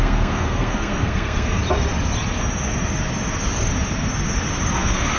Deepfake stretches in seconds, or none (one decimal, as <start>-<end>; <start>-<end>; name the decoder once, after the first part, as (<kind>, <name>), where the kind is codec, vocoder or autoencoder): 0.0-1.6 (codec, SNAC); 4.7-5.2